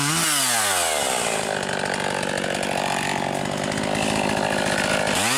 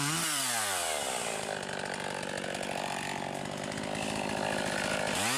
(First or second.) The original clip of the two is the first